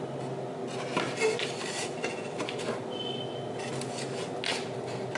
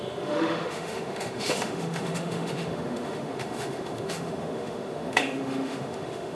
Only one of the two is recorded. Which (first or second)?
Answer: first